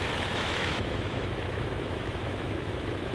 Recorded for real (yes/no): no